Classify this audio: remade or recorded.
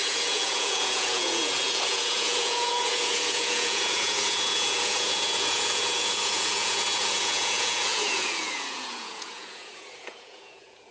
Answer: remade